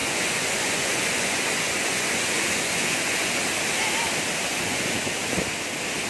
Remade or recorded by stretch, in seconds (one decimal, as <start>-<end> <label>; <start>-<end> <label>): 0.0-3.4 remade; 3.4-4.5 recorded; 4.5-5.1 remade; 5.1-6.1 recorded